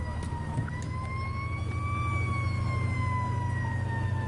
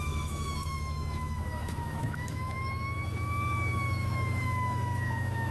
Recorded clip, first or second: first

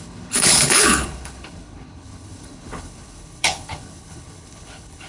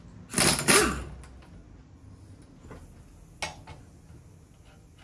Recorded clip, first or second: second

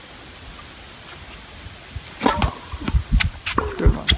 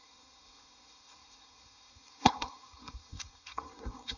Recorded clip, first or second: first